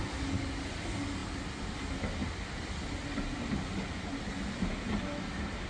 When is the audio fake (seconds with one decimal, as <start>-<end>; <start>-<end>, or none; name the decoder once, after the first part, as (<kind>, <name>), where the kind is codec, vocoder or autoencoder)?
none